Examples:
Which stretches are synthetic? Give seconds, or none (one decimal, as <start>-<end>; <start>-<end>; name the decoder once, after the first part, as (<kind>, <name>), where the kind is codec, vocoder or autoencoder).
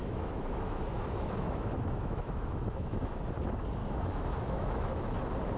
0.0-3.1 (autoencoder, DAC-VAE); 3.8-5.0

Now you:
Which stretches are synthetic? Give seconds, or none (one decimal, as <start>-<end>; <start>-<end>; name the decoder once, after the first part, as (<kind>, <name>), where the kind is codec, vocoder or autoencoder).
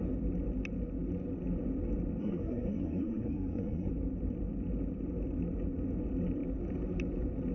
2.2-3.9 (codec, SNAC)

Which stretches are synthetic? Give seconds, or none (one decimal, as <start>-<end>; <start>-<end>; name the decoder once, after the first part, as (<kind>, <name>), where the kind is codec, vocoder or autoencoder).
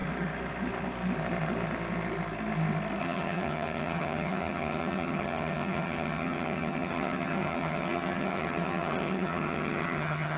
3.0-10.4 (vocoder, HiFi-GAN)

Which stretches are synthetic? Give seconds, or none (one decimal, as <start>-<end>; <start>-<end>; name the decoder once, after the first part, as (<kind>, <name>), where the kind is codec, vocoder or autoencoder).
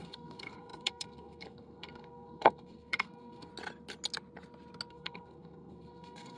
0.0-3.5 (codec, SNAC); 4.9-6.4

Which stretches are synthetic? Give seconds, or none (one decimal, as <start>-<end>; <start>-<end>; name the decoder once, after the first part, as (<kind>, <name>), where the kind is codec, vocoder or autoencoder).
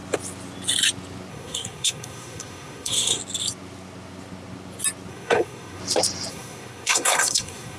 1.3-3.2 (codec, SNAC); 5.1-5.8; 6.3-7.8